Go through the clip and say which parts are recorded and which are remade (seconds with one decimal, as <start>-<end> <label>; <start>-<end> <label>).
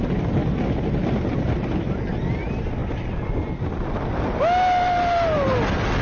0.0-6.0 recorded